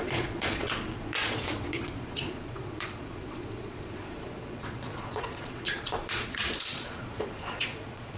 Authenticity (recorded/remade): remade